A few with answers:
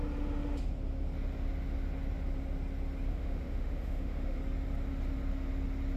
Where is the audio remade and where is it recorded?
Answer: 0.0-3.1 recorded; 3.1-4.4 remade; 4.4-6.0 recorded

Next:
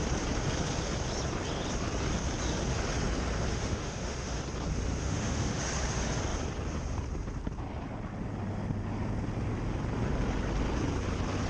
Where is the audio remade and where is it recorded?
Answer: 0.0-3.5 recorded; 3.5-4.4 remade; 4.4-5.0 recorded; 5.0-5.6 remade; 5.6-11.5 recorded

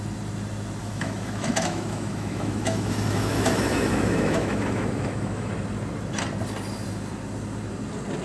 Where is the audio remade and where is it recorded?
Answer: 0.0-0.8 recorded; 0.8-5.5 remade; 5.5-8.2 recorded

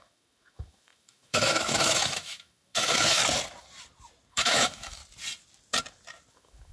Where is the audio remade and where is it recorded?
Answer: 0.0-3.2 remade; 3.2-4.3 recorded; 4.3-5.0 remade; 5.0-6.3 recorded; 6.3-6.7 remade

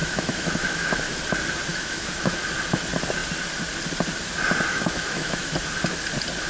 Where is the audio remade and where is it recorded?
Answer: 0.0-1.2 remade; 1.2-1.7 recorded; 1.7-2.4 remade; 2.4-4.7 recorded; 4.7-5.5 remade; 5.5-6.5 recorded

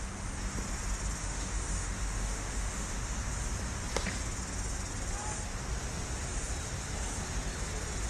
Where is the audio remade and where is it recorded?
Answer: 0.0-1.2 recorded; 1.2-3.2 remade; 3.2-8.1 recorded

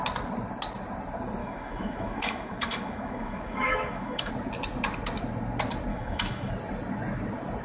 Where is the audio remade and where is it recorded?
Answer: 0.0-1.4 recorded; 1.4-4.3 remade; 4.3-5.9 recorded; 5.9-6.5 remade; 6.5-7.6 recorded

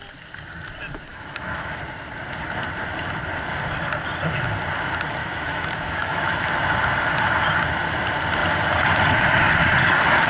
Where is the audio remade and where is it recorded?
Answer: 0.0-1.1 recorded; 1.1-1.8 remade; 1.8-5.2 recorded; 5.2-6.4 remade; 6.4-10.3 recorded